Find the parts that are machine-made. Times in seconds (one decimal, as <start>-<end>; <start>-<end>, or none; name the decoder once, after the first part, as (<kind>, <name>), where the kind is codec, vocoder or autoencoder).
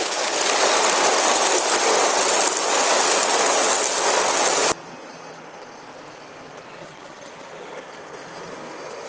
6.8-7.3 (vocoder, HiFi-GAN)